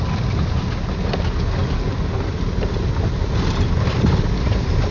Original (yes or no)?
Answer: yes